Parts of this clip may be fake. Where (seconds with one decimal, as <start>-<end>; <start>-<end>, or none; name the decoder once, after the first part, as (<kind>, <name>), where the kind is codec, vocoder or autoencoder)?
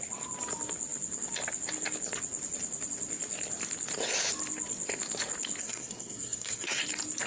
5.6-6.8 (codec, SNAC)